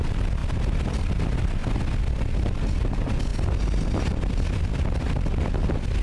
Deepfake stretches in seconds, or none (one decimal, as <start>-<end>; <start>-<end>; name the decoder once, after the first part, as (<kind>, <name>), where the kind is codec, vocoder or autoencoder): 0.0-1.6 (vocoder, BigVGAN v2); 2.9-3.3; 4.0-6.0